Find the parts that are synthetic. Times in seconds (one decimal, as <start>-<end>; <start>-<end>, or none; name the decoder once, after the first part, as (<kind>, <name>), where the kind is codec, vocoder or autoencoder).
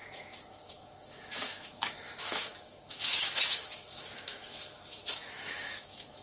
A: 0.0-6.2 (autoencoder, DAC-VAE)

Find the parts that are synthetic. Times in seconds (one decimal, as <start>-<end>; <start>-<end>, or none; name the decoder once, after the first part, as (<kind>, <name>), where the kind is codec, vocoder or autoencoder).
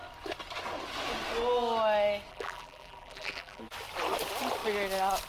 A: 2.3-3.6 (vocoder, BigVGAN v2)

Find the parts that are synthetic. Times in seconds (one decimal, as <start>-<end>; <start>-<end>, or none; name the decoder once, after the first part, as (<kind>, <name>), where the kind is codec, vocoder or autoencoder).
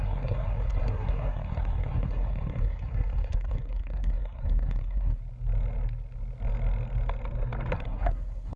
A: 0.0-5.2 (codec, SNAC); 7.7-8.6